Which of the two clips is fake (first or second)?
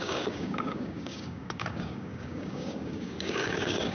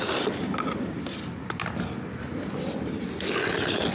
first